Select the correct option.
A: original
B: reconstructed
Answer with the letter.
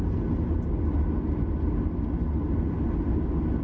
A